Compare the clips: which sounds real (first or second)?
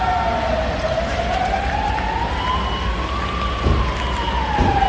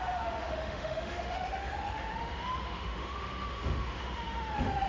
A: first